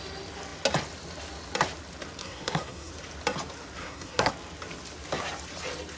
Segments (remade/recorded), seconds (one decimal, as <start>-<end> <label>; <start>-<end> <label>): 0.0-2.2 recorded; 2.2-2.9 remade; 2.9-3.8 recorded; 3.8-4.3 remade; 4.3-6.0 recorded